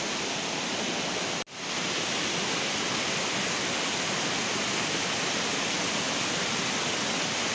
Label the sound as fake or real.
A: real